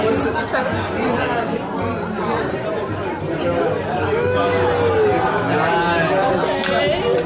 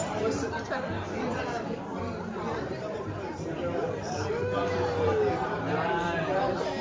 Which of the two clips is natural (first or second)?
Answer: first